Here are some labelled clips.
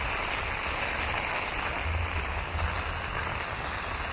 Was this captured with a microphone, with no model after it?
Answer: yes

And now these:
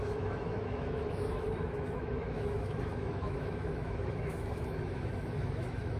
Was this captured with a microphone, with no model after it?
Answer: no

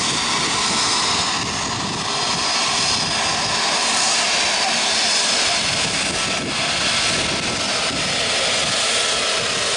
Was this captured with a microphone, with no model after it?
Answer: yes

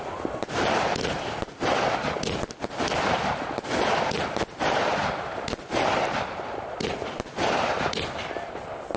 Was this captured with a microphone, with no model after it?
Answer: yes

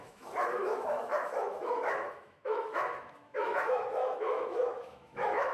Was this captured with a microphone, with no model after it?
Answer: no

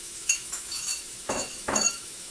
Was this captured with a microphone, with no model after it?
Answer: no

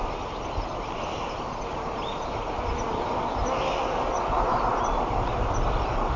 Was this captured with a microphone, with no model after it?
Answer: yes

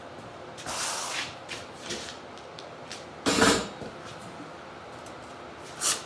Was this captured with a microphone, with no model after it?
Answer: no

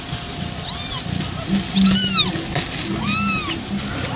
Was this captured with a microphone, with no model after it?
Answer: yes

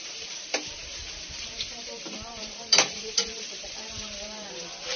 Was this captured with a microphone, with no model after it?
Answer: no